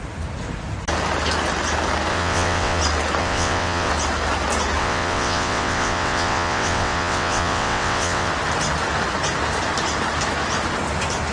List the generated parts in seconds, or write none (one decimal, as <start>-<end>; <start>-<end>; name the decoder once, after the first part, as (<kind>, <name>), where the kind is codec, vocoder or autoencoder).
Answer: 2.1-2.8 (vocoder, WaveNeXt); 3.2-3.9; 4.8-8.3